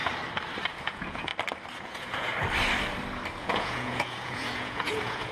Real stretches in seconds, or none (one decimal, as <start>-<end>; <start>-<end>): 0.0-0.7; 1.3-1.8; 2.3-3.4

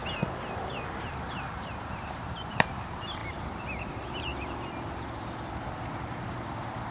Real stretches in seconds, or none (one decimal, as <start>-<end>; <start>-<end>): 0.0-1.1; 4.3-5.9

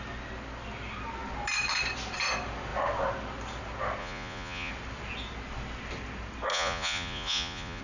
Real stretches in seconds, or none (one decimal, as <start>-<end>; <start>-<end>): 0.0-4.0; 4.7-6.5

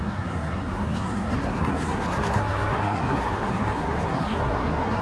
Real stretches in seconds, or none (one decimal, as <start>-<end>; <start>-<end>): none

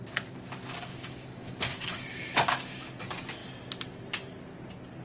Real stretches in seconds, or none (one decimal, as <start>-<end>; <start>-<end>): 0.0-0.9; 2.9-5.0

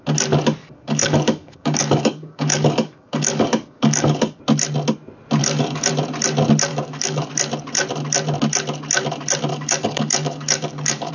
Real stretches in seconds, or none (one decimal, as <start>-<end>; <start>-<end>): 0.0-0.6; 4.4-5.4; 5.9-6.7; 7.3-9.5

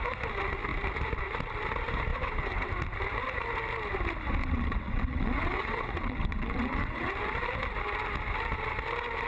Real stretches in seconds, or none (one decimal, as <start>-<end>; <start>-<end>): 0.0-2.1; 2.7-4.4; 7.1-9.3